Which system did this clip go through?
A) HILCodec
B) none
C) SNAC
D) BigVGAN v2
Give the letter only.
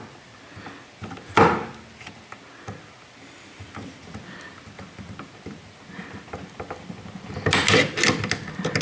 B